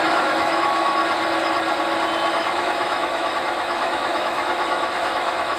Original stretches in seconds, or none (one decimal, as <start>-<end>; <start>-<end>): 1.0-2.3